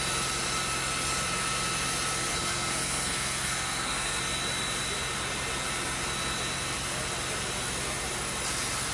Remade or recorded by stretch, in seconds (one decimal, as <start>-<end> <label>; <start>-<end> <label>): 0.0-2.3 recorded; 2.3-4.2 remade; 4.2-8.9 recorded

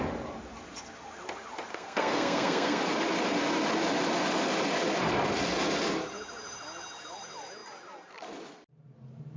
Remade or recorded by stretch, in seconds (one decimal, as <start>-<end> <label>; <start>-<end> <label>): 0.0-1.7 recorded; 1.7-2.8 remade; 2.8-9.4 recorded

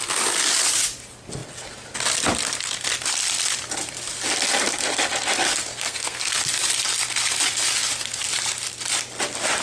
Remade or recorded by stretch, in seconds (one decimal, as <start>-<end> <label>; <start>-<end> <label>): 0.0-5.7 recorded; 5.7-6.4 remade; 6.4-9.6 recorded

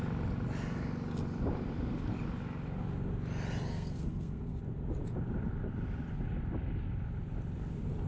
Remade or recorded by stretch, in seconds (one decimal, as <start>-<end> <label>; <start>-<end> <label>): 0.0-3.7 recorded; 3.7-4.6 remade; 4.6-8.1 recorded

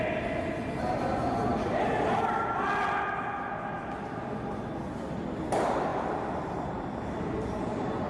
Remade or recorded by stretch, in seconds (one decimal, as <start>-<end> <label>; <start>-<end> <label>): 0.0-8.1 recorded

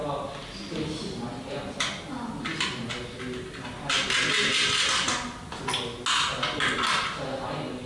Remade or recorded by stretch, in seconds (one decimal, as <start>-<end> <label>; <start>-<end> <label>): 0.0-7.9 recorded

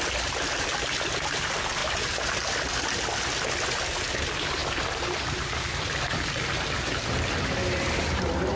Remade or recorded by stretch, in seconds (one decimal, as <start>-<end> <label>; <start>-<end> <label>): 0.0-8.6 recorded